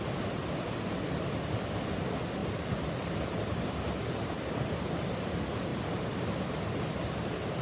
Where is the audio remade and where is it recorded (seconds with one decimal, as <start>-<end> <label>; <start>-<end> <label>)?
0.0-7.6 recorded